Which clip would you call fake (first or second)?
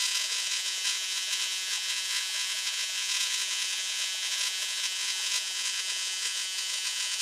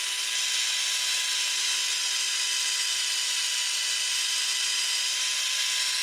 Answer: first